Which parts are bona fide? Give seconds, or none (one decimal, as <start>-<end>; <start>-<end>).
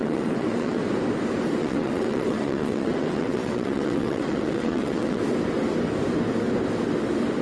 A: 0.8-1.6; 5.2-7.4